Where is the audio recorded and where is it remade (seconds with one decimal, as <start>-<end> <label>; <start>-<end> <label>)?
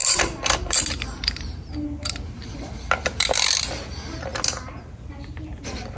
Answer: 0.0-3.6 remade; 3.6-6.0 recorded